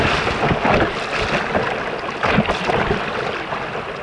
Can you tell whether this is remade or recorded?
recorded